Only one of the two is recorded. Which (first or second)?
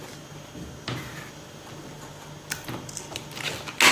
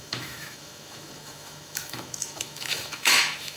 first